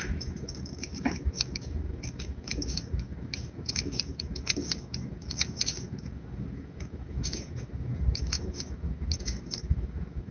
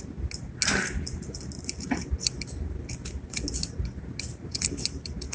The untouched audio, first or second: second